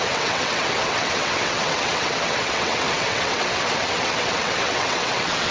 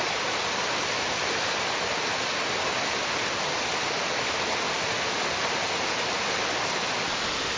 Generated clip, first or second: first